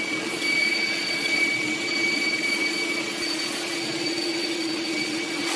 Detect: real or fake fake